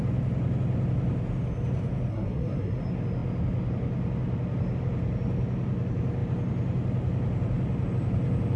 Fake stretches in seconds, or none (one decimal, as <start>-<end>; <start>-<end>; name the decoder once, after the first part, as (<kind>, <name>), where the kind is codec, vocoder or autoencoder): 2.1-2.8 (codec, SNAC)